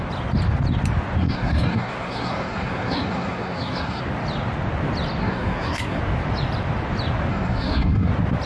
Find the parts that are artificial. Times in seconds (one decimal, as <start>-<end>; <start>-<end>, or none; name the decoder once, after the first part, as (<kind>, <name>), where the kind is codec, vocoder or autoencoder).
1.2-4.0 (codec, SNAC); 5.2-6.0; 7.3-8.1